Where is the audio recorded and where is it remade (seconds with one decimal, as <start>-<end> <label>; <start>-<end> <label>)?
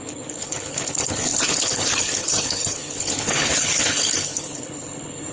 0.0-5.3 remade